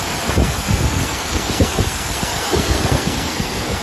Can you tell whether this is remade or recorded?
remade